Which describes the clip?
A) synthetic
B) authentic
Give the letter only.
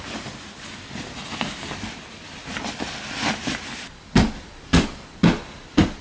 B